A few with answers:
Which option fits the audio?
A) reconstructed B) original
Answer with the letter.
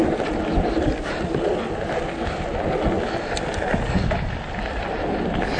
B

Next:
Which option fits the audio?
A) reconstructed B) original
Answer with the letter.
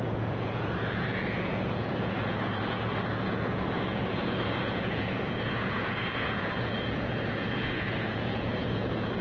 A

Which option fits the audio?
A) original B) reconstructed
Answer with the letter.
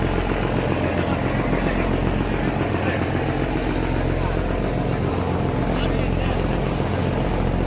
A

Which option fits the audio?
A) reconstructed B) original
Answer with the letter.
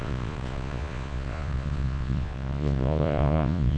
A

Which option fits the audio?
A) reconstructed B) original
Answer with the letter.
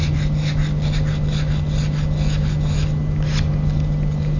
B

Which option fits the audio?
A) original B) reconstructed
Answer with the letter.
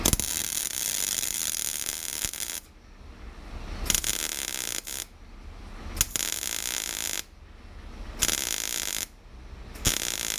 A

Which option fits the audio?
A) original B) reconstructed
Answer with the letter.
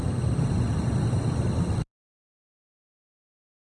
A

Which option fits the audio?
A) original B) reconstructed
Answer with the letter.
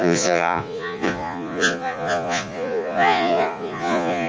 B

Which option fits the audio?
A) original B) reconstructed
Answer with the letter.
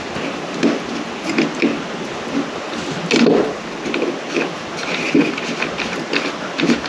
A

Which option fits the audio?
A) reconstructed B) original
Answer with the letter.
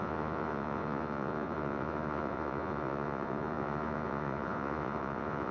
A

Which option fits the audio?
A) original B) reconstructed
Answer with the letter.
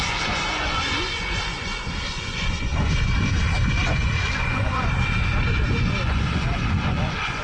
B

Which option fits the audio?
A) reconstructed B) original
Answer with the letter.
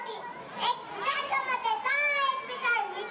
B